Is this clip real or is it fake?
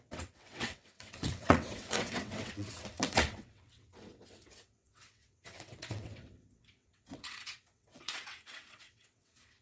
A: fake